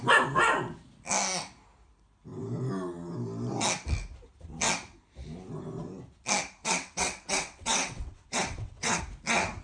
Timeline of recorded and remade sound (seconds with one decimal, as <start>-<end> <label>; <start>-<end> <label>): 0.0-6.6 recorded; 6.6-9.0 remade; 9.0-9.6 recorded